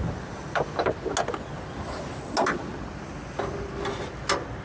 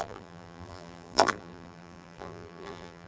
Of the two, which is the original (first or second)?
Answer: first